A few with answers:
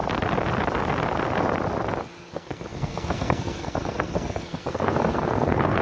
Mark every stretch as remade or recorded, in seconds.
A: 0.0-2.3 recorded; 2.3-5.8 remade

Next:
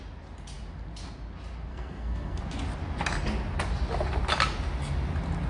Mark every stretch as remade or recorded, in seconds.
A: 0.0-1.7 recorded; 1.7-2.4 remade; 2.4-5.5 recorded

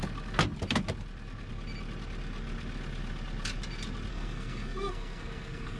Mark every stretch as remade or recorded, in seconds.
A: 0.0-4.1 recorded; 4.1-5.8 remade

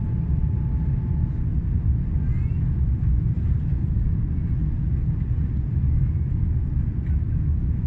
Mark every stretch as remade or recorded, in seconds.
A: 0.0-7.9 recorded